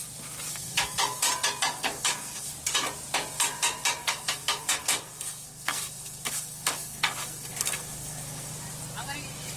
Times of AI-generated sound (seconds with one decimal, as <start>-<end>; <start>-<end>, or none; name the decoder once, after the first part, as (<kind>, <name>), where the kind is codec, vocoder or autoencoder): 0.5-1.2 (codec, SNAC); 1.7-2.5; 4.0-8.5